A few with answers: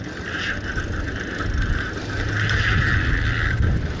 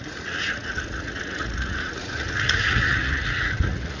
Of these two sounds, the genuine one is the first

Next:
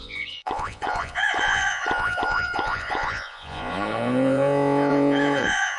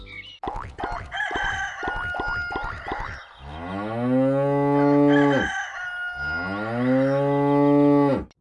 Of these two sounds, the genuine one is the second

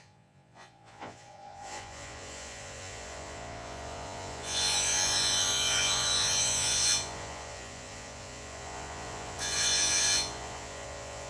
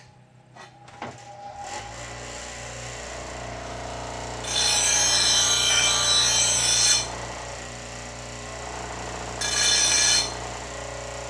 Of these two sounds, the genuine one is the second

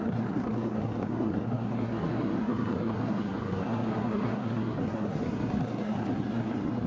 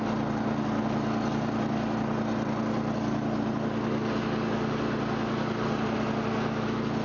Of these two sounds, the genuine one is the second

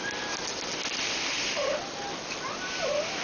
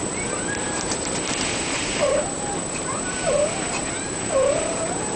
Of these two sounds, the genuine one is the first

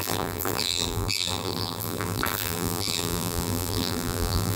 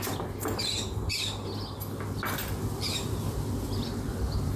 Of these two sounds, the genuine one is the second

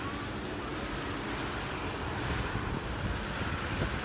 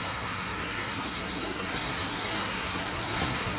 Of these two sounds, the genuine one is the first